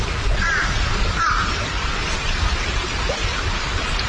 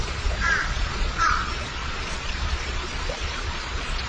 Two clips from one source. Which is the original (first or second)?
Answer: first